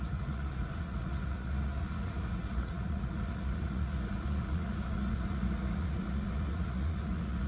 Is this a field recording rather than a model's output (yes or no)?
no